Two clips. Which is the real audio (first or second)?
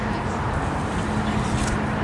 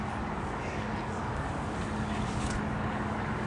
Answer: first